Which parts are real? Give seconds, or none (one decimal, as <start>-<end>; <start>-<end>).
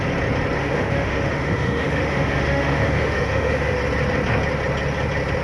0.0-0.6; 3.8-5.4